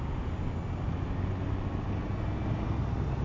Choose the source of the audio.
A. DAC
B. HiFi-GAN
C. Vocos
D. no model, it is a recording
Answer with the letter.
D